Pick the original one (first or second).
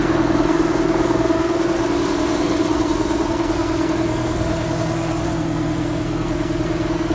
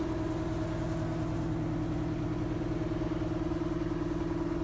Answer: second